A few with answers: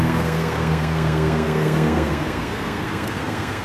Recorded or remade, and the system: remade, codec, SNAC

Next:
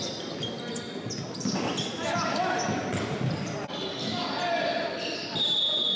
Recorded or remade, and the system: recorded